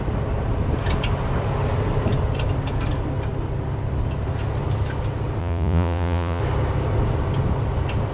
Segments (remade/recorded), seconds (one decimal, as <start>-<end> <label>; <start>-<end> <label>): 0.0-5.4 recorded; 5.4-6.4 remade; 6.4-8.1 recorded